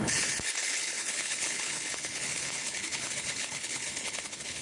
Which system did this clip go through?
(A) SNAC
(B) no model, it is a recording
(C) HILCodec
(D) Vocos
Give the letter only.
C